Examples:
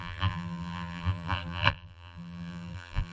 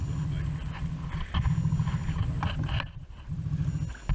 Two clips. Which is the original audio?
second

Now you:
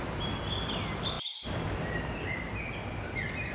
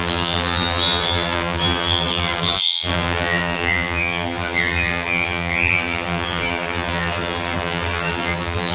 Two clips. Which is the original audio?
first